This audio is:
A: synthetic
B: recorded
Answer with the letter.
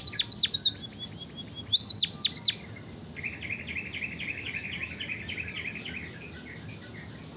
B